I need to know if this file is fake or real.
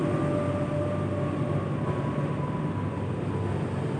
real